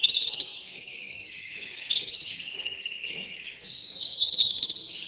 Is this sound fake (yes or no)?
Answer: yes